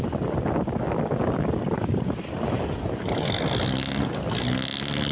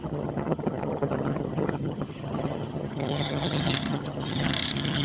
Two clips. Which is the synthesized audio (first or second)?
second